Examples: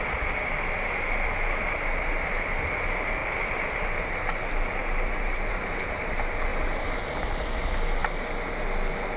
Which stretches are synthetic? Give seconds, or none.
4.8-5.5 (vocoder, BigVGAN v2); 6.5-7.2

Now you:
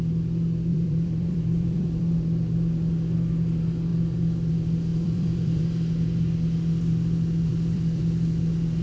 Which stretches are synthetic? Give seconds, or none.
0.7-2.0 (vocoder, BigVGAN v2); 4.9-5.6; 7.5-8.0